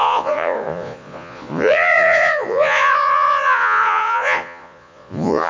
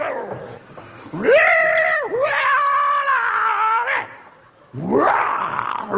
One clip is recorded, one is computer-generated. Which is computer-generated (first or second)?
first